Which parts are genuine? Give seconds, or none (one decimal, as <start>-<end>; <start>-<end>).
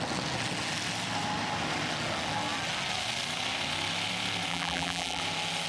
0.0-4.5; 5.2-5.7